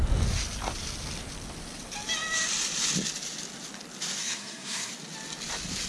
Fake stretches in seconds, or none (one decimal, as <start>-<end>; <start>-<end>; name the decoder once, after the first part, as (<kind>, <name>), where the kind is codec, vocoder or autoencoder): 4.2-4.9 (codec, SNAC)